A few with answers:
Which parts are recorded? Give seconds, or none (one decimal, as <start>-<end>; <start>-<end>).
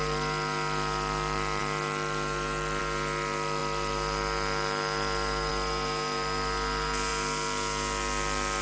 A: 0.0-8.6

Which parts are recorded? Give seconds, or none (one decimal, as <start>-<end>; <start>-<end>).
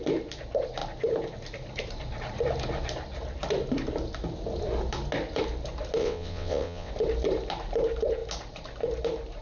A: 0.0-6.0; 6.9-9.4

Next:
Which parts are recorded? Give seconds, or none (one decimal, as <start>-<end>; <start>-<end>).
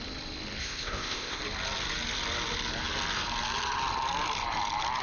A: 0.0-0.6; 1.4-5.0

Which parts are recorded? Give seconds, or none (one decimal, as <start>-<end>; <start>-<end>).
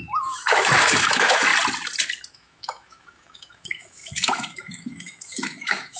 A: 1.5-2.3